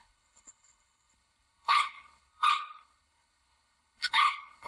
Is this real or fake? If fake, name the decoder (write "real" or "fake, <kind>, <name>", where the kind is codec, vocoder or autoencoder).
fake, codec, HILCodec